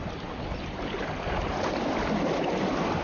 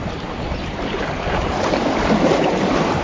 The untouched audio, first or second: first